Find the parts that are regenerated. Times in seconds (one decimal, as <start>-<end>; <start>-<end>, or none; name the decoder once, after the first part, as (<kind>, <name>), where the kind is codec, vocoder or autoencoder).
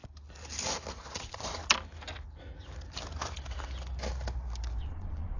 0.9-1.6 (vocoder, Vocos); 4.8-5.4